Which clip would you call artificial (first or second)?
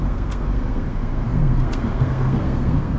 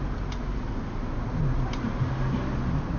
first